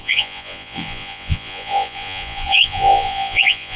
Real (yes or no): no